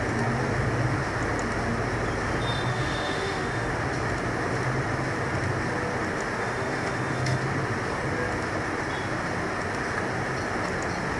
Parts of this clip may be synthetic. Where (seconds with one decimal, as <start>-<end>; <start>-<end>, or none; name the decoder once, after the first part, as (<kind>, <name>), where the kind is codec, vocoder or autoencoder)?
2.7-3.7 (autoencoder, DAC-VAE); 6.4-7.4